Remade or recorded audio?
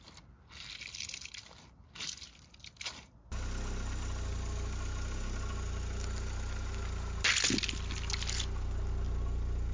recorded